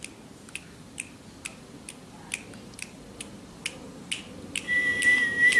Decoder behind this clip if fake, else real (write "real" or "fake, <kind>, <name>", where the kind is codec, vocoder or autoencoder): real